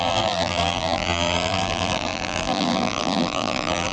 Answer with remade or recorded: remade